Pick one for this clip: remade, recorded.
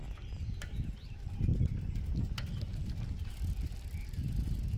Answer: recorded